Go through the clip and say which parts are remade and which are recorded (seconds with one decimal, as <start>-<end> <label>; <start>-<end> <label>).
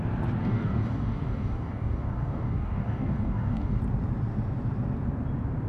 0.0-0.4 recorded; 0.4-3.8 remade; 3.8-5.7 recorded